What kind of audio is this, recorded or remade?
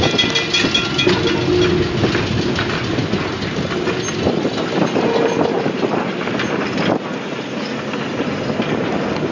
recorded